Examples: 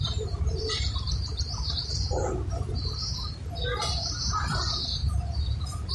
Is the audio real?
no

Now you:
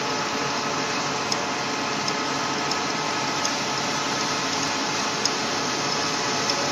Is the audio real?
yes